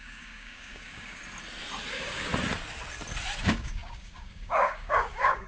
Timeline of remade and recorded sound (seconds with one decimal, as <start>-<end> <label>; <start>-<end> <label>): 0.0-1.2 remade; 1.2-1.9 recorded; 1.9-2.3 remade; 2.3-3.4 recorded; 3.4-5.5 remade